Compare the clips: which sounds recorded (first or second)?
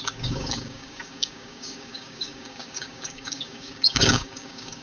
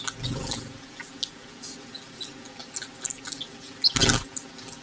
second